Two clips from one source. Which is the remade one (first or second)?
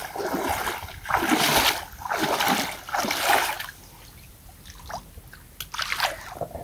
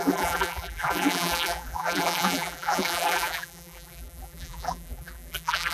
second